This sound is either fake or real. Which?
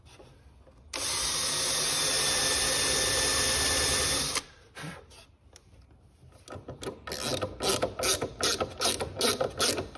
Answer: real